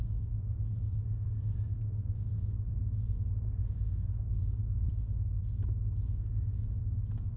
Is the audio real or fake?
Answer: fake